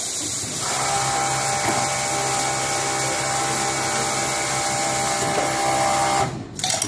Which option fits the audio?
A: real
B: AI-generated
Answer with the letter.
A